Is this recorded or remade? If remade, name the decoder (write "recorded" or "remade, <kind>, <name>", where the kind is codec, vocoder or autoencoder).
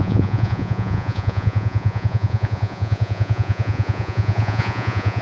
remade, vocoder, Vocos